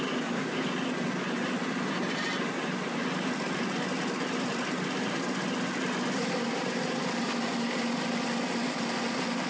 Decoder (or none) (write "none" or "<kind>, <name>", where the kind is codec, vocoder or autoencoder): none